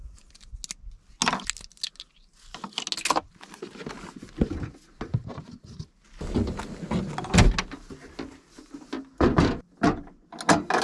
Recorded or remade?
recorded